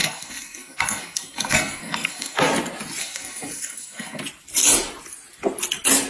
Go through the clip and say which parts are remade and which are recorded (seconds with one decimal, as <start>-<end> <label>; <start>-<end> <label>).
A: 0.0-2.4 remade; 2.4-3.0 recorded; 3.0-4.2 remade; 4.2-6.1 recorded